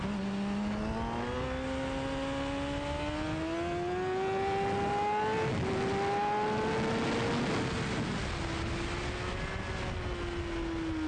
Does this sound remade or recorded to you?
recorded